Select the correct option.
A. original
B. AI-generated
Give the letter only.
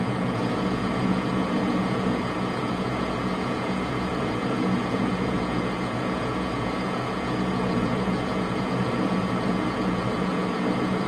B